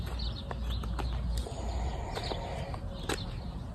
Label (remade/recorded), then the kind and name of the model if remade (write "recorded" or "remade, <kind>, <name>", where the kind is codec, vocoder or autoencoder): recorded